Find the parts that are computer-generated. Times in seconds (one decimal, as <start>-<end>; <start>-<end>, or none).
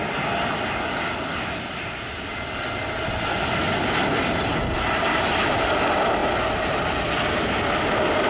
none